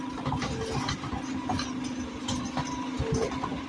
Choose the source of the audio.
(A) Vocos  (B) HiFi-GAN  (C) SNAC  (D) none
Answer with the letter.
D